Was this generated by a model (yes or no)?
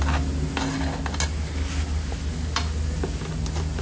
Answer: no